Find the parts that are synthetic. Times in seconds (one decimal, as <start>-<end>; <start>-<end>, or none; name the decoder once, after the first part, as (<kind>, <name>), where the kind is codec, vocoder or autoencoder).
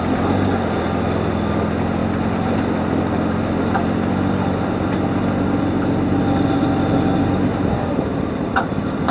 none